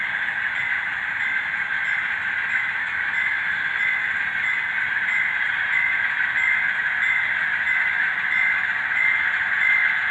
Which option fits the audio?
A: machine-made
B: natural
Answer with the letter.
B